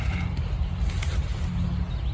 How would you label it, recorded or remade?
recorded